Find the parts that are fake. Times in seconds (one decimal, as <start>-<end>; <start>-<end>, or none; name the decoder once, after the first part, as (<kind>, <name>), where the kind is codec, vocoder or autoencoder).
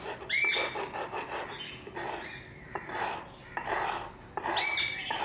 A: none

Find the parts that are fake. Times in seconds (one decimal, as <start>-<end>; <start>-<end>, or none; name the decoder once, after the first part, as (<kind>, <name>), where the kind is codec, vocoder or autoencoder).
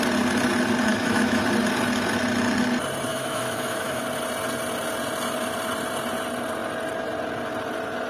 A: 0.9-1.4 (autoencoder, DAC-VAE); 3.1-4.0